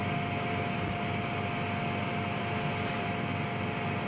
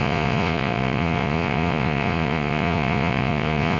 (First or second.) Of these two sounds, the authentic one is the first